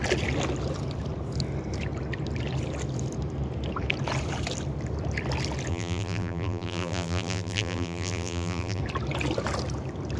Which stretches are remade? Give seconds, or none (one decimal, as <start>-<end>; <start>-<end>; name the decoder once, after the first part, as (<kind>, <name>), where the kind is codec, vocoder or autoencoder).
5.7-8.8 (vocoder, BigVGAN v2)